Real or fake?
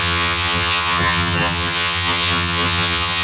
fake